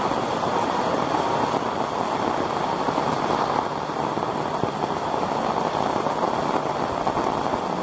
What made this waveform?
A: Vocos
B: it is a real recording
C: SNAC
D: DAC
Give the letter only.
B